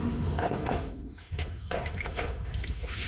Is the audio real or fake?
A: fake